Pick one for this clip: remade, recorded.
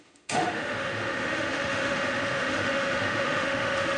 remade